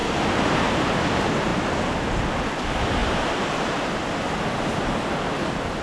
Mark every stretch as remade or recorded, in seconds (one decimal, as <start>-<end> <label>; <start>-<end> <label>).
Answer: 0.0-0.9 remade; 0.9-3.0 recorded; 3.0-4.2 remade; 4.2-5.8 recorded